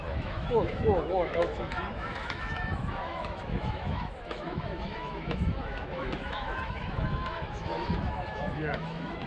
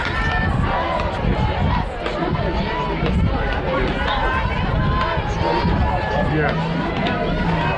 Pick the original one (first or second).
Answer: second